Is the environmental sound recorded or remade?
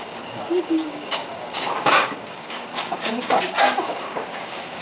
remade